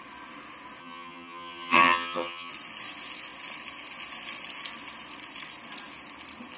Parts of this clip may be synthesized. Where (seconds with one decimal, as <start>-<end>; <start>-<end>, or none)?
0.8-2.5